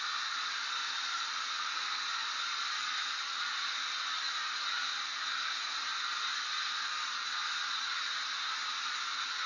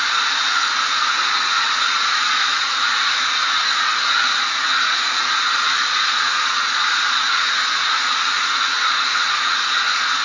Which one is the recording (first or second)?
first